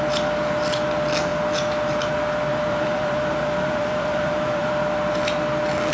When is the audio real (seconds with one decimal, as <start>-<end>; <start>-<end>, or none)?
0.0-2.5; 4.8-5.9